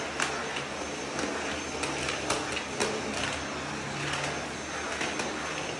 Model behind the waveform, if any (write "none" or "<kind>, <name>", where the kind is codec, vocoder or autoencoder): none